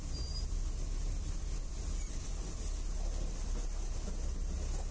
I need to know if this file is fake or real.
real